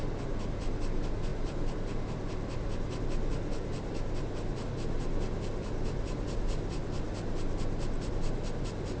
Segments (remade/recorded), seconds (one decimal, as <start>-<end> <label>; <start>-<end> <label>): 0.0-9.0 recorded